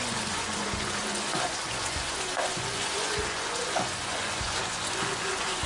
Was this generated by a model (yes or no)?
yes